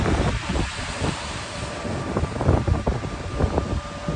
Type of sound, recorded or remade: recorded